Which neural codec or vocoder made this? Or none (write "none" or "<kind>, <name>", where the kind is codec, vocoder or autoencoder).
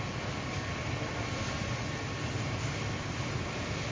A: none